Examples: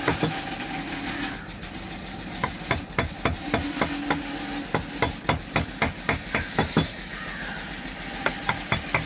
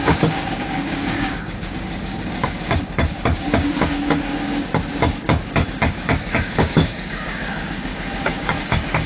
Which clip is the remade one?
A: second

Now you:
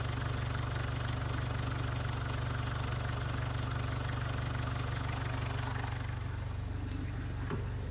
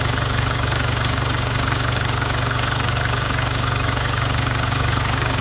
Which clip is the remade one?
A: second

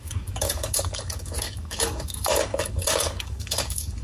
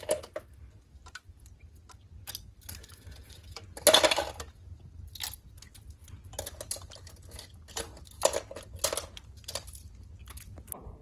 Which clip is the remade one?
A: first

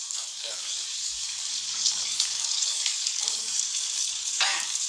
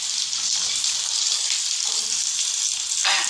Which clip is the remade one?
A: first